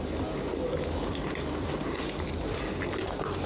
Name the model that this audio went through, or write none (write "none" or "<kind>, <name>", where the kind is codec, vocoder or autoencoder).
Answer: none